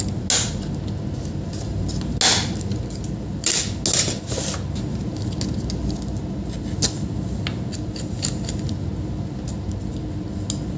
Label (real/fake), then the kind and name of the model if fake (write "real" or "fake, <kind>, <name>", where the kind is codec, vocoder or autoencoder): real